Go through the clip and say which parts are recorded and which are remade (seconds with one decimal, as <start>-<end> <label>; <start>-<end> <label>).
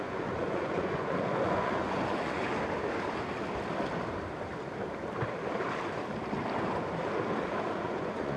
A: 0.0-2.5 remade; 2.5-7.5 recorded; 7.5-8.4 remade